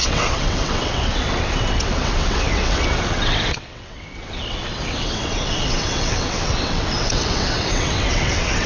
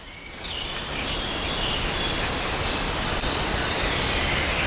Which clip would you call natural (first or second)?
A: second